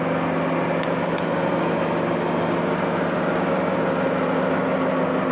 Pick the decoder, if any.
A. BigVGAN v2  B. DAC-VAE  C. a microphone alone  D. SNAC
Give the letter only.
C